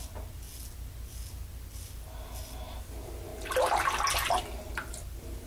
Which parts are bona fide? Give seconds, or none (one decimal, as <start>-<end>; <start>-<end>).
0.0-5.5